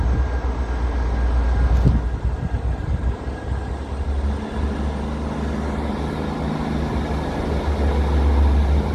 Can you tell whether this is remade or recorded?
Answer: recorded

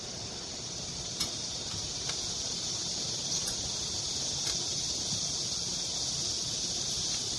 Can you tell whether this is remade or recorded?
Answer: recorded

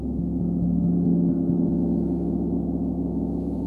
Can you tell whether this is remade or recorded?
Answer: remade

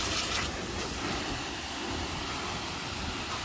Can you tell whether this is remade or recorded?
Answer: recorded